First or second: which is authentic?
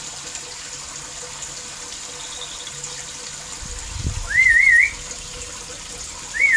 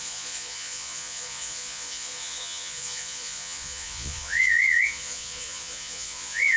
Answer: first